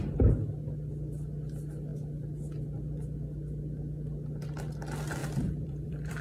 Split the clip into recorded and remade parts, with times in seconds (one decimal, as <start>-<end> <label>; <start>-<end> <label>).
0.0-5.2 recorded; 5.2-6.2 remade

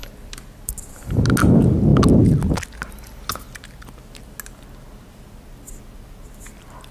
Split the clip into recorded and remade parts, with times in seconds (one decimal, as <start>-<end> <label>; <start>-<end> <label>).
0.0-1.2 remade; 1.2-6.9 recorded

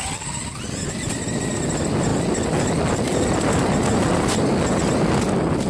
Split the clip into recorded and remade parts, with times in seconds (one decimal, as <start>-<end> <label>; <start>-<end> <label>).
0.0-5.7 recorded